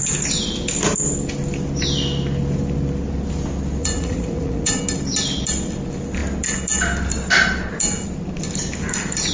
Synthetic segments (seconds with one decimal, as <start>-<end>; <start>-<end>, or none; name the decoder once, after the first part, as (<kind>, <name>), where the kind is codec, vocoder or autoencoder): 3.8-4.8 (vocoder, Vocos)